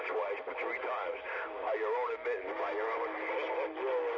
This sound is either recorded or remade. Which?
recorded